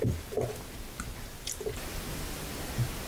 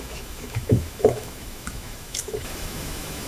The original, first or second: first